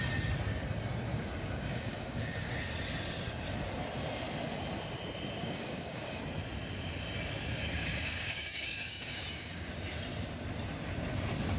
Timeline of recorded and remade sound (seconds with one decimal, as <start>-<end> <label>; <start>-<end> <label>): 0.0-1.1 recorded; 1.1-2.5 remade; 2.5-5.4 recorded; 5.4-6.2 remade; 6.2-7.8 recorded; 7.8-9.7 remade; 9.7-11.6 recorded